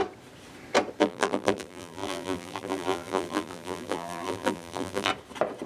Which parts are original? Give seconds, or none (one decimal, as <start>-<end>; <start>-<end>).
0.0-1.0; 5.1-5.7